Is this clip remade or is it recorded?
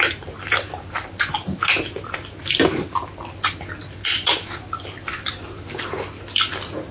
recorded